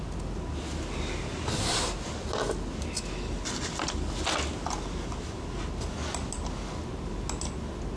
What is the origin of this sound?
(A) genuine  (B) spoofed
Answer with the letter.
A